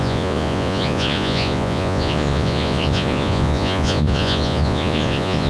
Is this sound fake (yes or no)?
yes